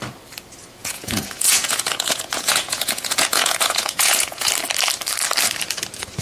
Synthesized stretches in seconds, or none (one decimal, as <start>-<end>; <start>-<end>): 0.8-4.5